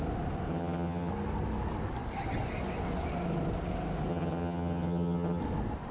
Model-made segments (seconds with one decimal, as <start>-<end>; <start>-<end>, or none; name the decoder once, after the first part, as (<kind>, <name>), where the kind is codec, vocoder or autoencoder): 0.5-1.1 (vocoder, HiFi-GAN); 4.1-5.4

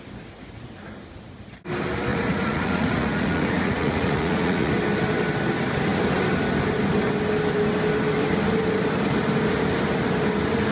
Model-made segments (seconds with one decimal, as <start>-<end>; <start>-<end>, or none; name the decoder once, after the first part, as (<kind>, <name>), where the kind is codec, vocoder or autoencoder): 2.1-4.7 (vocoder, Vocos)

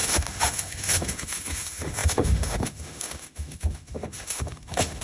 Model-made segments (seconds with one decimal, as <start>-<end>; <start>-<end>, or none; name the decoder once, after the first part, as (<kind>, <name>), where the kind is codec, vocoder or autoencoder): 0.0-5.0 (autoencoder, DAC-VAE)

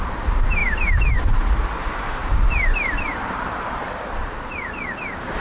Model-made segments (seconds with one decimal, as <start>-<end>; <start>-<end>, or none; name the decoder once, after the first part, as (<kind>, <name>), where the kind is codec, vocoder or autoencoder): 0.6-1.4 (vocoder, BigVGAN v2); 2.2-4.1

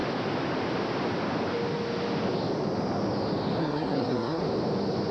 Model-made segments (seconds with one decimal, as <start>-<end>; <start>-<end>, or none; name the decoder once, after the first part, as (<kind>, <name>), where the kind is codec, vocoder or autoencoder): 3.6-4.4 (codec, SNAC)